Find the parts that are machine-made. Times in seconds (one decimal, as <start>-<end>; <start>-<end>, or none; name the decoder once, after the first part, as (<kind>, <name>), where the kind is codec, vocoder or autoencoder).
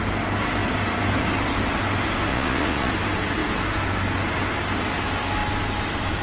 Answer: 2.3-2.9 (vocoder, Vocos)